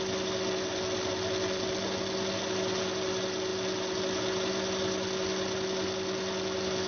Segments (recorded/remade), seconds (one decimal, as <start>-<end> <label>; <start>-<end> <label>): 0.0-6.9 recorded